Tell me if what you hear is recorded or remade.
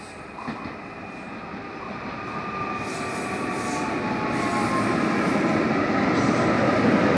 recorded